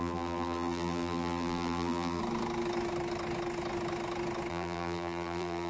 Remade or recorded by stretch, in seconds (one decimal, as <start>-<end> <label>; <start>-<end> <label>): 0.0-2.2 remade; 2.2-4.5 recorded; 4.5-5.7 remade